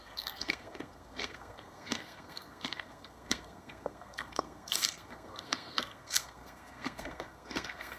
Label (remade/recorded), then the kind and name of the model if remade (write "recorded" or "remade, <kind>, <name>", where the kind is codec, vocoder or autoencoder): remade, codec, SNAC